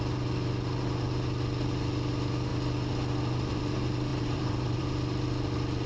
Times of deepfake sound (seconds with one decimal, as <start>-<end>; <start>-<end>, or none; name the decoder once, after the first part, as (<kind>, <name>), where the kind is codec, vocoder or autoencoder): 4.1-4.8 (vocoder, BigVGAN v2)